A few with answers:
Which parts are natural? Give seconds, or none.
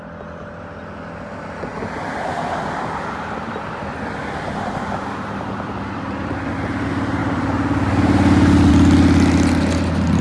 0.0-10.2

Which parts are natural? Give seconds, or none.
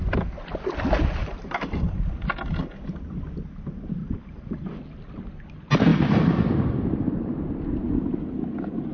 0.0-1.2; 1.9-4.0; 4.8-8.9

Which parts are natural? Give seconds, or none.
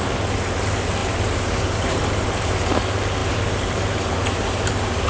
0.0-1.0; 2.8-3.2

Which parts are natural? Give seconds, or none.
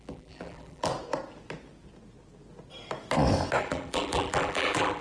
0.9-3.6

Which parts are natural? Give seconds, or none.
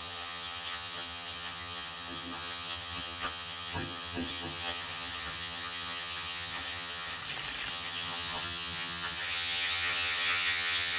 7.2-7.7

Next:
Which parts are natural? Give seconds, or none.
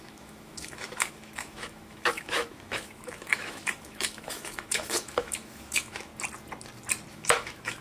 6.1-7.1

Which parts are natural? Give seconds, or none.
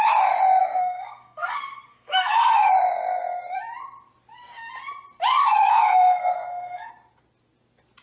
0.0-0.6; 2.7-5.4; 6.9-8.0